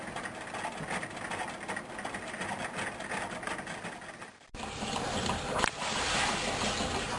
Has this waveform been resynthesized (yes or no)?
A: no